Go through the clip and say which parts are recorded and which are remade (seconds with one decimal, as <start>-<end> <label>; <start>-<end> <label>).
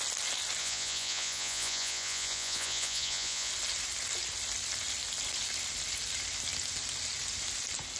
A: 0.0-0.6 recorded; 0.6-3.5 remade; 3.5-8.0 recorded